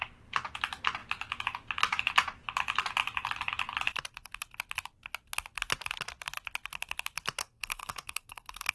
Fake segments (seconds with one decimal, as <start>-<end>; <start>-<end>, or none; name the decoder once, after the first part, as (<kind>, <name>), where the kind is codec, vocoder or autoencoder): 7.4-8.7 (codec, SNAC)